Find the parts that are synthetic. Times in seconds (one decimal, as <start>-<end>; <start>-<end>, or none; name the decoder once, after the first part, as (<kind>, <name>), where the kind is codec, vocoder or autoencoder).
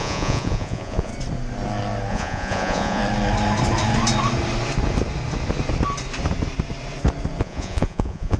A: 0.0-1.1 (vocoder, Vocos); 2.1-3.0; 7.4-8.4